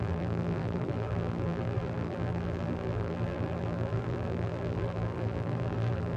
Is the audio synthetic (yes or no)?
yes